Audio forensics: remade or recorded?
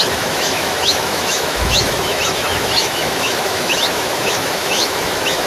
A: remade